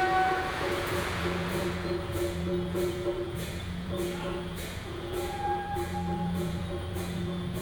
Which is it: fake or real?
fake